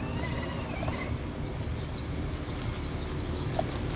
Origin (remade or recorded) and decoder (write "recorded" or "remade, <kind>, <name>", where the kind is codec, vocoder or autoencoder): recorded